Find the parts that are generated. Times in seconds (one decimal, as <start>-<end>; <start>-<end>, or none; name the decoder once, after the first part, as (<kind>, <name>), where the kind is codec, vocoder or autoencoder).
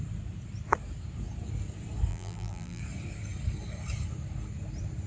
2.1-2.8 (vocoder, BigVGAN v2)